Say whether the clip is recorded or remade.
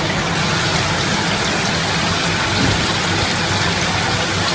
recorded